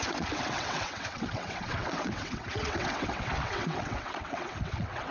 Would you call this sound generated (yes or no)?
yes